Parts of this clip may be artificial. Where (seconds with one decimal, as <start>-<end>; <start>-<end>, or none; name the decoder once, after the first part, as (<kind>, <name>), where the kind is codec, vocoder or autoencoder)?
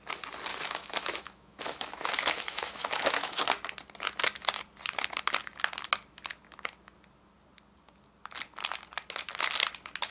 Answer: 0.5-3.4 (autoencoder, DAC-VAE)